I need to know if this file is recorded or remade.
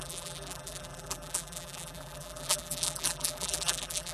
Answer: remade